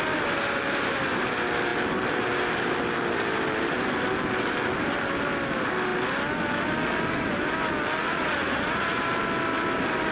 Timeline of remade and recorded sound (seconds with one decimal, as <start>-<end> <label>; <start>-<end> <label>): 0.0-8.0 recorded; 8.0-9.0 remade; 9.0-10.1 recorded